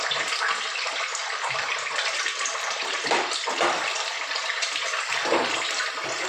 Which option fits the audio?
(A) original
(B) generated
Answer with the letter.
B